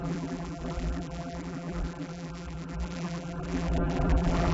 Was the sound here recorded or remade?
remade